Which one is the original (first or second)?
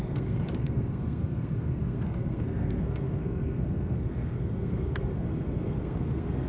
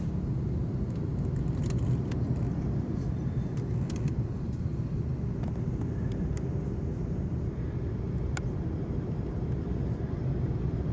second